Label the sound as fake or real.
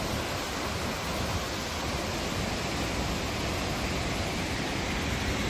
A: real